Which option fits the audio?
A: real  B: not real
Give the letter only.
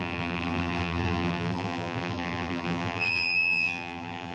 B